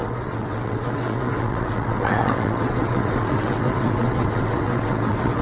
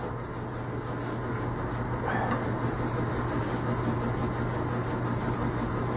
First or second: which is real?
second